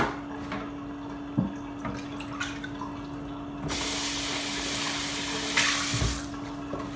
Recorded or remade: recorded